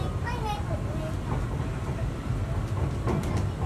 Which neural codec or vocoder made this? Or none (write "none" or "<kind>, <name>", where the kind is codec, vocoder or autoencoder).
none